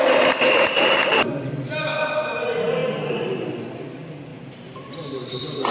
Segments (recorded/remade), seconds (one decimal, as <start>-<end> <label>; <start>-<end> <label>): 0.0-4.3 recorded; 4.3-5.7 remade